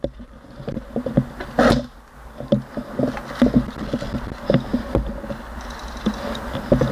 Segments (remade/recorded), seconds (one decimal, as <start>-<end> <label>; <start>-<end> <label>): 0.0-6.9 recorded